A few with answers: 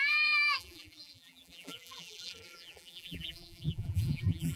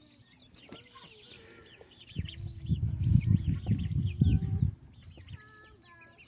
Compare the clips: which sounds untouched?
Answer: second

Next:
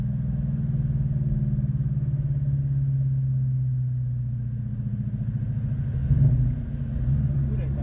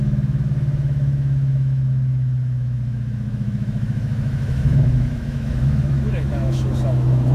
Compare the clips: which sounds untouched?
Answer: first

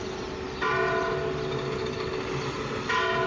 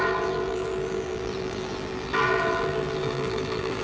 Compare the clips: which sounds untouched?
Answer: first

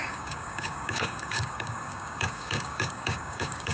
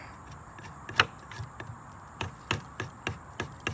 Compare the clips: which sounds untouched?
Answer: second